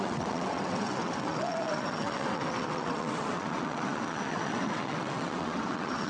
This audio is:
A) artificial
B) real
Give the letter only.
A